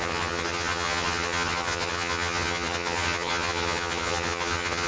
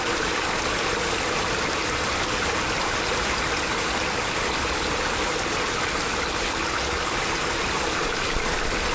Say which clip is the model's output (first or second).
first